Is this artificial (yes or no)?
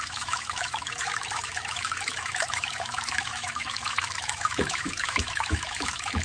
yes